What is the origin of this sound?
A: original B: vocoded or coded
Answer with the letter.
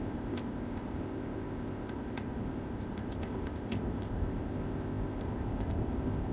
B